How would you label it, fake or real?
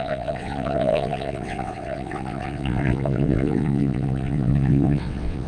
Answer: fake